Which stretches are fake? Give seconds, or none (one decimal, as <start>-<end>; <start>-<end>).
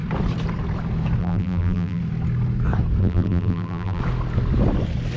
1.2-2.0; 3.0-4.0